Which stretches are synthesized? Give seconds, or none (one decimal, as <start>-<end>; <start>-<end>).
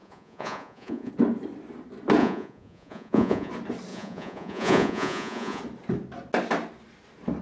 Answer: 0.0-1.1; 2.2-3.5; 3.9-5.6